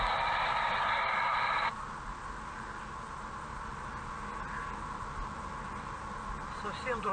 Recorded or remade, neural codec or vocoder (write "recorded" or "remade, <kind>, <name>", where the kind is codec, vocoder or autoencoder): recorded